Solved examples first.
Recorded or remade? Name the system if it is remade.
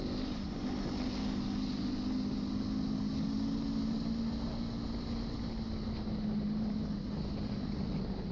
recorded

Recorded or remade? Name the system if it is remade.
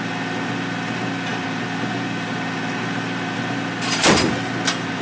recorded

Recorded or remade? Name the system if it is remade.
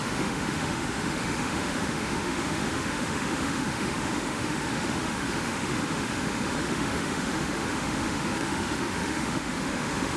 remade, autoencoder, DAC-VAE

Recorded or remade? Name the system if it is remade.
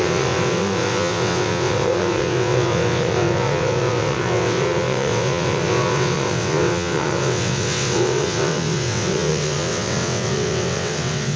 remade, vocoder, WaveNeXt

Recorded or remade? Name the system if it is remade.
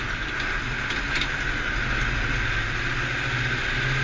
recorded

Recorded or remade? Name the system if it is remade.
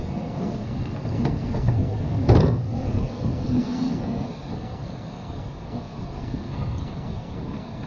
remade, codec, SNAC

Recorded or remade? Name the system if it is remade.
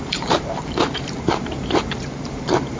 remade, vocoder, BigVGAN v2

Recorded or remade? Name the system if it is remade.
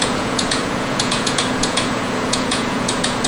remade, vocoder, Vocos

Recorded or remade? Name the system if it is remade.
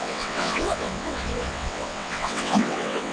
remade, vocoder, WaveNeXt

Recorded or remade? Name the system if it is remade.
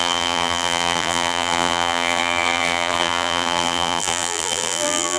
remade, vocoder, BigVGAN v2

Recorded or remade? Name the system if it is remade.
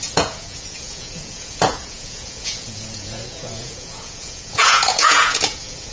remade, vocoder, Vocos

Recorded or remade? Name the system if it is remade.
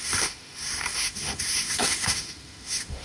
remade, autoencoder, DAC-VAE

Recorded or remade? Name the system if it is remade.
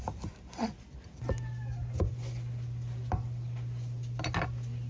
recorded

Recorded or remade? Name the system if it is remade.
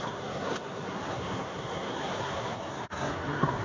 remade, codec, SNAC